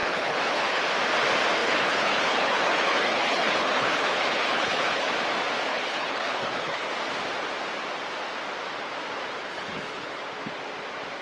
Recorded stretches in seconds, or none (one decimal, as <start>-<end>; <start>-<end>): 0.8-1.6; 5.1-5.7; 6.9-9.5; 10.2-11.2